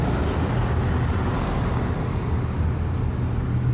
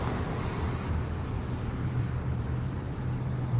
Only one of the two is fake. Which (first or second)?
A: second